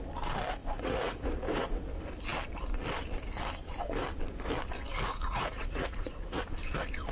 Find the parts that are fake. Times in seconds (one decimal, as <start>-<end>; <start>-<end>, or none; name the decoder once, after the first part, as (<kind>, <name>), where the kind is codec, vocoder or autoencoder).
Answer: 0.6-1.9 (vocoder, Vocos); 5.1-6.4